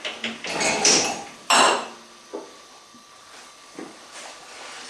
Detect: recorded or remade remade